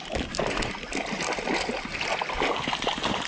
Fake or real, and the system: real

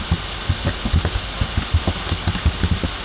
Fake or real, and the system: real